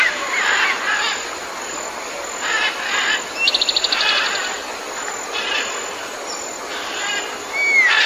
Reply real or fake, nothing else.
real